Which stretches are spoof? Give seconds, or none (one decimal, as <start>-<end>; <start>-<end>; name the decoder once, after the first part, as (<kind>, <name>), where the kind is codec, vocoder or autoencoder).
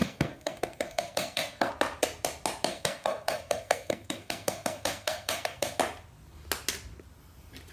0.0-1.7 (codec, SNAC); 2.7-5.8